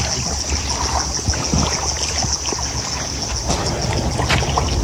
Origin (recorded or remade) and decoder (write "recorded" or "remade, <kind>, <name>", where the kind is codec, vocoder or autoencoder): recorded